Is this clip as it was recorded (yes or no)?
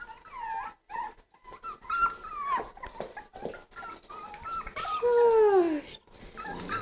yes